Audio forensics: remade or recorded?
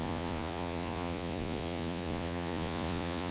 remade